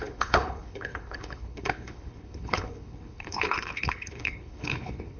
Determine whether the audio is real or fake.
fake